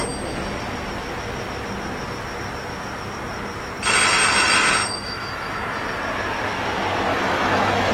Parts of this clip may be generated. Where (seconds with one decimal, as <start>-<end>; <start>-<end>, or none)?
4.8-5.5; 7.1-7.9